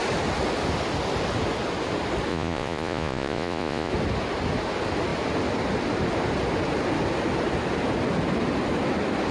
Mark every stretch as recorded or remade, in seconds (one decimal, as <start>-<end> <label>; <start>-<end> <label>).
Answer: 0.0-2.3 recorded; 2.3-3.9 remade; 3.9-9.3 recorded